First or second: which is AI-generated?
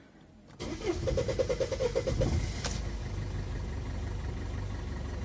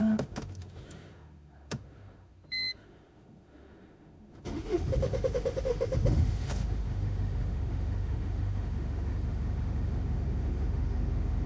second